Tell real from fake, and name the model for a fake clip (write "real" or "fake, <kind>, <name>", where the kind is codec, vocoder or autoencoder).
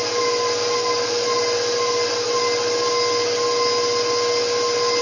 real